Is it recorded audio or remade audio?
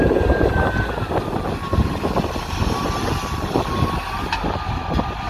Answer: recorded